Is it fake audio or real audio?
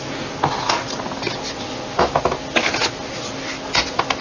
real